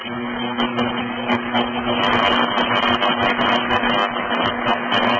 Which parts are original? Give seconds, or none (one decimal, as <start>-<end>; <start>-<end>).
0.0-5.2